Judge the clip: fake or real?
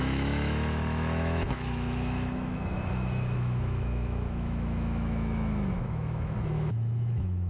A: fake